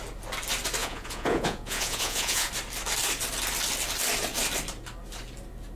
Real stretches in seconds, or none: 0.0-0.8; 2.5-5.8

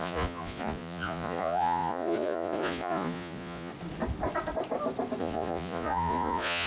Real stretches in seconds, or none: 3.7-5.2

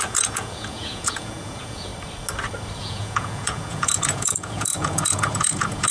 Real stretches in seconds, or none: 1.9-2.8

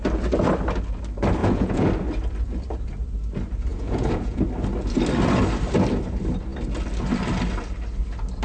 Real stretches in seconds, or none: 0.0-1.4; 1.9-3.7; 4.4-8.4

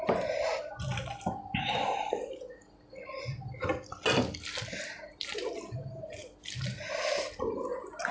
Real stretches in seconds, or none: 0.0-8.1

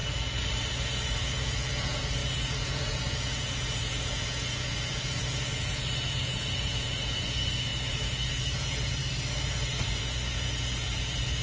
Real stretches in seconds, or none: 0.0-0.7; 9.0-10.0